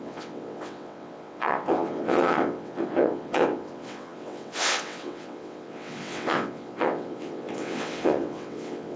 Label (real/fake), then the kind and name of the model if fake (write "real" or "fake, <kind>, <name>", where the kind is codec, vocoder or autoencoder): fake, vocoder, WaveNeXt